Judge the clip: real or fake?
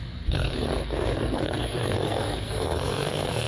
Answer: fake